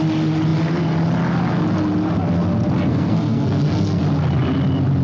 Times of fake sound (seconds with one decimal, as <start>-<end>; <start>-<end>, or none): 2.9-4.0